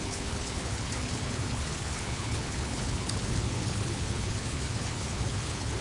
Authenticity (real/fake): fake